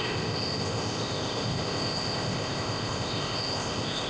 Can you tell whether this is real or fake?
fake